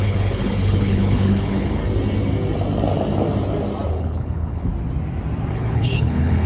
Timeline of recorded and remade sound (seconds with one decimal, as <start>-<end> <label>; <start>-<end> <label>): 0.0-1.8 remade; 1.8-3.9 recorded; 3.9-4.7 remade; 4.7-5.5 recorded; 5.5-6.5 remade